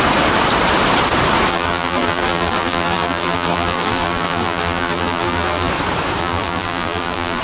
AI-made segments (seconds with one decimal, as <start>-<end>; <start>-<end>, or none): 1.5-5.7; 6.2-7.4